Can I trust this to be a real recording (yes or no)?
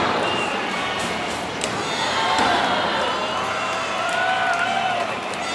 yes